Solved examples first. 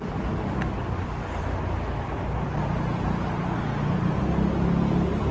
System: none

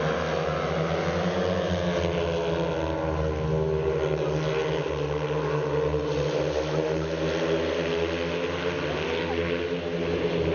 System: none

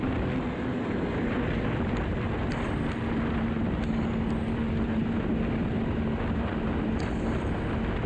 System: none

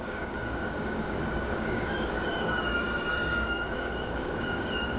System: codec, DAC